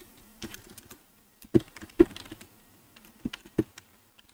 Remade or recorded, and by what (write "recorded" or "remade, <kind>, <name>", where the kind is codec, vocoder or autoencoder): remade, vocoder, BigVGAN v2